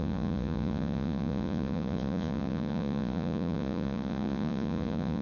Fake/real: fake